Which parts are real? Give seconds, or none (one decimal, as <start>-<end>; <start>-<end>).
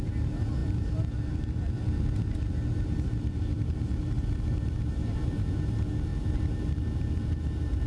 none